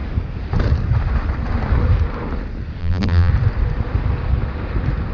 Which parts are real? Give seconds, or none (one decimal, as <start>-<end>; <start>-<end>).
0.0-2.8; 3.3-5.1

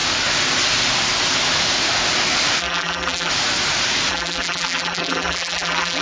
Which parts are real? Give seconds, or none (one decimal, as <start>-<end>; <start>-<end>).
0.0-2.6; 3.3-4.1

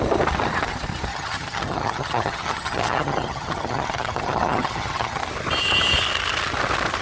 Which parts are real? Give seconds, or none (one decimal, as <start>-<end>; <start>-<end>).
0.0-1.1; 5.2-7.0

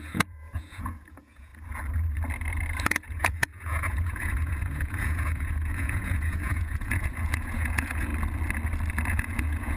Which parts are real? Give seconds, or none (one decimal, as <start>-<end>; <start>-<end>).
1.5-2.8; 8.1-9.1

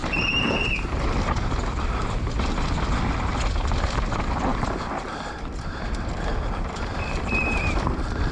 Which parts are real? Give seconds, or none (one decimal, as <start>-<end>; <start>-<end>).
0.0-8.3

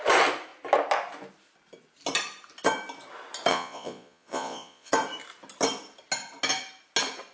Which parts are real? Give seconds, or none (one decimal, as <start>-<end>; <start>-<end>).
0.0-3.5; 4.9-7.3

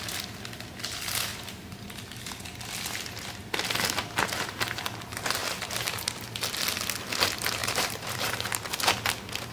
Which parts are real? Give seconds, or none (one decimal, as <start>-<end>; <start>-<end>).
0.0-1.3; 2.4-7.6; 8.5-9.5

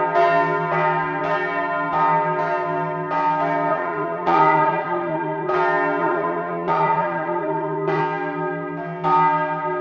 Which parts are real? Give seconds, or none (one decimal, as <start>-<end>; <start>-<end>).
0.0-3.7; 5.5-6.0; 8.0-9.8